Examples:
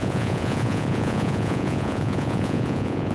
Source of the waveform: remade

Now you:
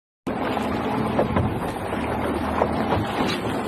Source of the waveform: recorded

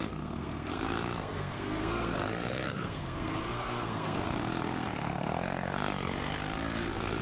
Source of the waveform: remade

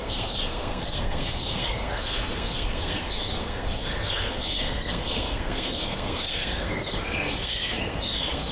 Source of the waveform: remade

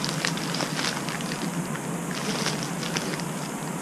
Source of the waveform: recorded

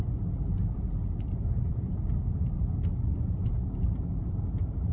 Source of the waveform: recorded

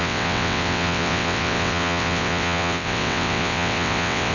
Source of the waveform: remade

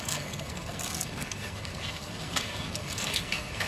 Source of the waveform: remade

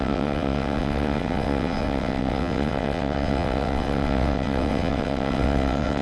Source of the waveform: remade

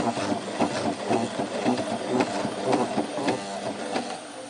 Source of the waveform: recorded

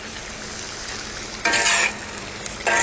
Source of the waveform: recorded